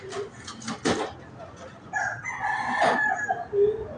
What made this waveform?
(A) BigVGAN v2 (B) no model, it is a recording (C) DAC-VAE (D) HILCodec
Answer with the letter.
B